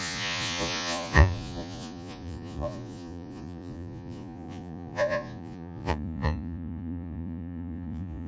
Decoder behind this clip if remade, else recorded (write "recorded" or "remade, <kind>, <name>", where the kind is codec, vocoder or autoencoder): remade, vocoder, Vocos